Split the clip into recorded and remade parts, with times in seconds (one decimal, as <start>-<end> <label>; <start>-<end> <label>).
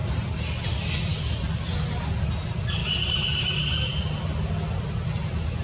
0.0-5.6 recorded